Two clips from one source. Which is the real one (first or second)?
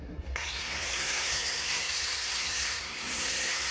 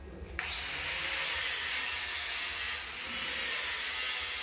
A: second